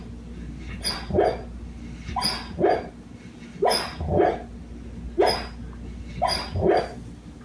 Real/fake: real